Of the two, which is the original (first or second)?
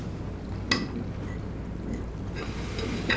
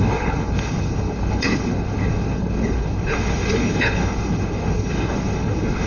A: first